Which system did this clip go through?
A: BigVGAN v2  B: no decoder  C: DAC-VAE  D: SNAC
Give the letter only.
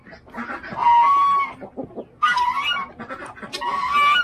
B